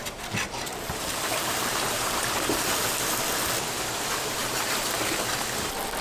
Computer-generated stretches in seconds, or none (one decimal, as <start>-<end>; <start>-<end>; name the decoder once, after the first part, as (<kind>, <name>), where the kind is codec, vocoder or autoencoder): 0.0-2.9 (vocoder, BigVGAN v2); 4.4-5.3